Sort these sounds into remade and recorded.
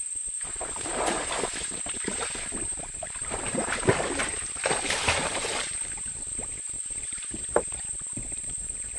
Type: remade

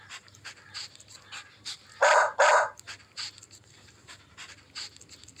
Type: recorded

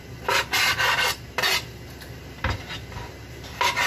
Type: recorded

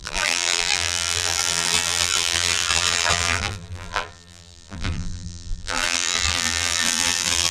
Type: remade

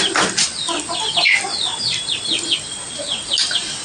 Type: recorded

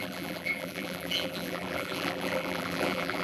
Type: remade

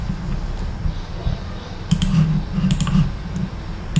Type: recorded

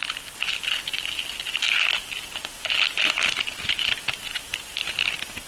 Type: recorded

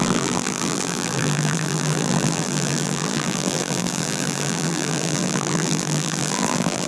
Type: remade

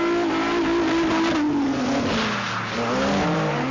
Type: recorded